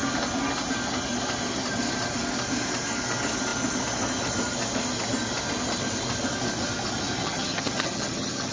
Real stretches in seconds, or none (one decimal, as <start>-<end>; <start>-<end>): 0.0-7.2